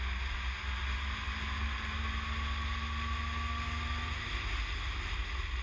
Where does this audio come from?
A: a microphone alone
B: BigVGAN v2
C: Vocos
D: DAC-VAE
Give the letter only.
A